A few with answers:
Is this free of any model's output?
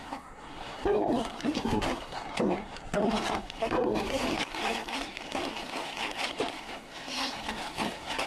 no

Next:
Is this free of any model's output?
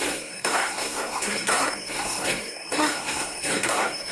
no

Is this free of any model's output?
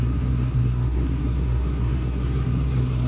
no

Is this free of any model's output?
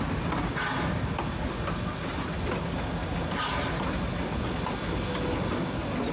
yes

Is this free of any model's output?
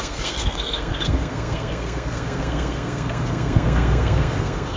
no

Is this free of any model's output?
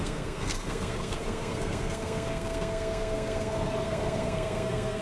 no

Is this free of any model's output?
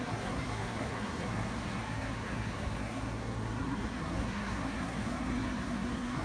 no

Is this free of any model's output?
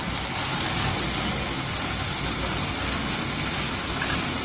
yes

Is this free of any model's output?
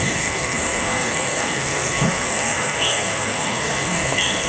no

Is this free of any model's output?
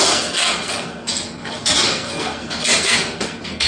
no